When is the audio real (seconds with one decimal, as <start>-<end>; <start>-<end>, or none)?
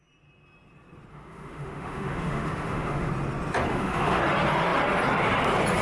0.0-1.1; 3.1-3.7; 4.2-5.8